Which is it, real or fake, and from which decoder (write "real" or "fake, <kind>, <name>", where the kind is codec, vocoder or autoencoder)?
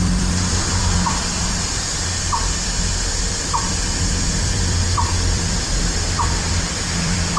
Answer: fake, vocoder, BigVGAN v2